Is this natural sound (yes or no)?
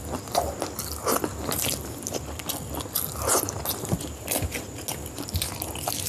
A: yes